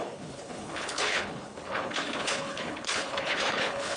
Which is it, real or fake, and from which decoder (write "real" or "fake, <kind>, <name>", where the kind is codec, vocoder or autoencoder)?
fake, codec, HILCodec